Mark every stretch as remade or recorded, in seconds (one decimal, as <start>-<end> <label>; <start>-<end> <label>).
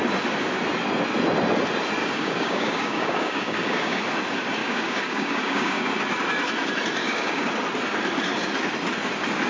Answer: 0.0-2.0 recorded; 2.0-4.0 remade; 4.0-4.6 recorded; 4.6-5.9 remade; 5.9-7.0 recorded; 7.0-7.5 remade; 7.5-9.5 recorded